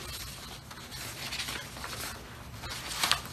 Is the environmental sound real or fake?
real